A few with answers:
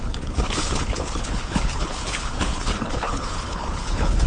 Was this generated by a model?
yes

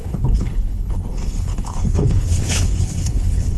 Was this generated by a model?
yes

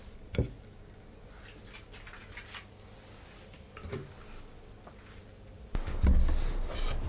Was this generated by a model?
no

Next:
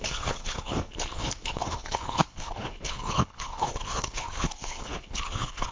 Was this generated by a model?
yes